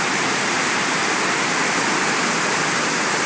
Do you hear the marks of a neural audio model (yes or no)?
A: no